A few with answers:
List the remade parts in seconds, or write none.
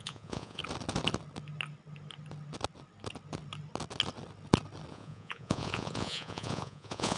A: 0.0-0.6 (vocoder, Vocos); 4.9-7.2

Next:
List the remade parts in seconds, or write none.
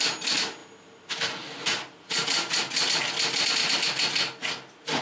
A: none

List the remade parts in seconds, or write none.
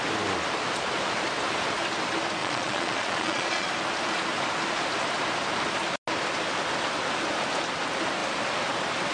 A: 2.4-3.7 (vocoder, Vocos)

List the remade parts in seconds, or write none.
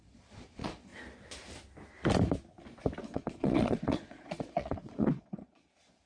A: 0.0-0.9 (vocoder, Vocos); 3.0-6.1